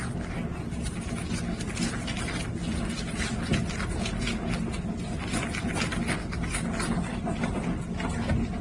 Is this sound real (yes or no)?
yes